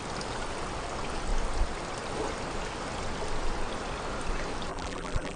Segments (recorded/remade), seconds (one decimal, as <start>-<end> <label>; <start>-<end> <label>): 0.0-4.7 recorded; 4.7-5.4 remade